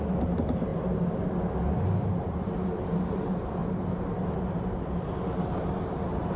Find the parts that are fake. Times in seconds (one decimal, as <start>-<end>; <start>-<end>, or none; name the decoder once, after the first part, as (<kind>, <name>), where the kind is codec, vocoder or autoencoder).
0.0-0.7 (vocoder, BigVGAN v2); 2.1-3.6; 4.4-6.4